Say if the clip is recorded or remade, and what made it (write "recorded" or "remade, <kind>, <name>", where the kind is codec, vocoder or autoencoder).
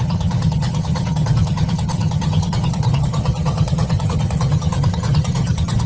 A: remade, vocoder, HiFi-GAN